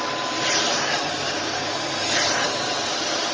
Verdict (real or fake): real